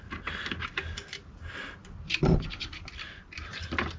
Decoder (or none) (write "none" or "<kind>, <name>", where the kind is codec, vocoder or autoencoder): none